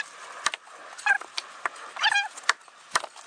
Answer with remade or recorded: recorded